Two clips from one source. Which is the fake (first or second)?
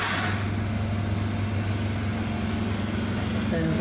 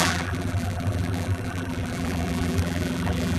second